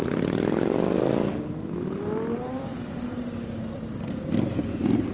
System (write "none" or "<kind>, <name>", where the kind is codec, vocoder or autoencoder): none